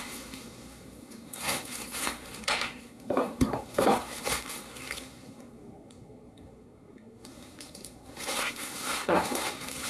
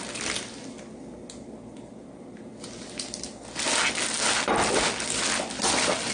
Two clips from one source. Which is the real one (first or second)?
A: second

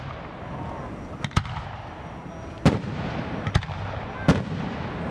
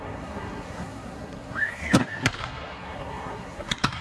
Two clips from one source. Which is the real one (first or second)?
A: first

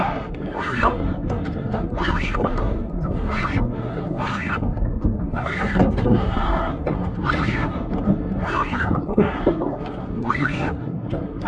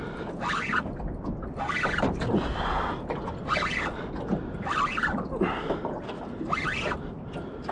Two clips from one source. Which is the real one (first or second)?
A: second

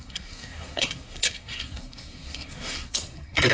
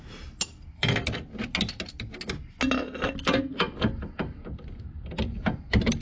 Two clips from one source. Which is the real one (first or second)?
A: second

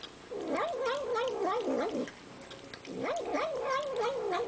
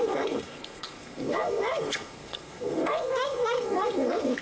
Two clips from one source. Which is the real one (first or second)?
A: first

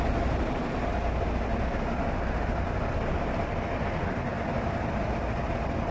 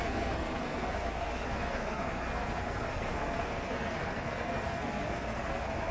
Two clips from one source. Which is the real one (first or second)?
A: first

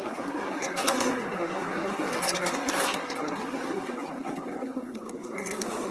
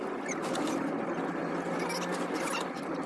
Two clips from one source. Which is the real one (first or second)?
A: second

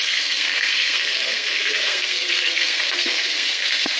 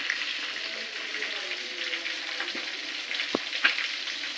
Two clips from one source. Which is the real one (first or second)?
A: second